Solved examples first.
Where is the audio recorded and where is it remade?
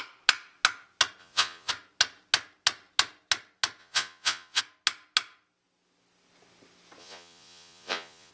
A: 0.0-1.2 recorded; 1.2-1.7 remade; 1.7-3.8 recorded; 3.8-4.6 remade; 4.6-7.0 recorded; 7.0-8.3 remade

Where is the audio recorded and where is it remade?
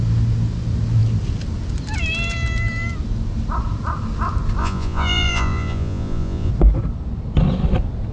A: 0.0-4.6 recorded; 4.6-6.5 remade; 6.5-8.1 recorded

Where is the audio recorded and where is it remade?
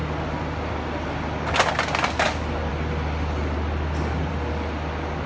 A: 0.0-5.3 recorded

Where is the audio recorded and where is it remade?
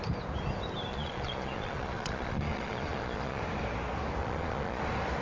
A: 0.0-0.9 recorded; 0.9-3.4 remade; 3.4-4.2 recorded; 4.2-4.8 remade; 4.8-5.2 recorded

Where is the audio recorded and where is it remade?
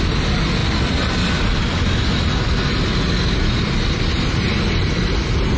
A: 0.0-5.6 recorded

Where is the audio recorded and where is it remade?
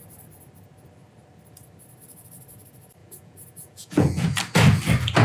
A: 0.0-3.0 recorded; 3.0-4.4 remade; 4.4-5.2 recorded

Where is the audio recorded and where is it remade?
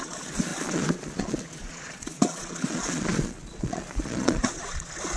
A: 0.0-5.2 remade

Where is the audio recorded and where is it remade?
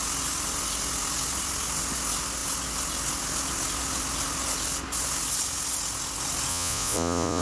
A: 0.0-6.5 recorded; 6.5-7.4 remade